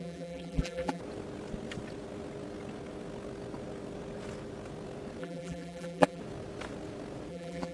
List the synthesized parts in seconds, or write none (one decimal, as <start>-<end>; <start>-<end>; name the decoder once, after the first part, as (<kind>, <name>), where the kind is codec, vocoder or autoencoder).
0.0-1.0 (vocoder, BigVGAN v2); 5.2-6.2; 7.3-7.7